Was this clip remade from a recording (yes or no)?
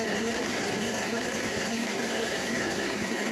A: yes